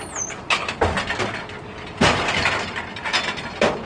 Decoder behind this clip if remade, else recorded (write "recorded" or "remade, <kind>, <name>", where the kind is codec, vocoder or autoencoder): recorded